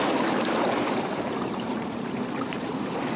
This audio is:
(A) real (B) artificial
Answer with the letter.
B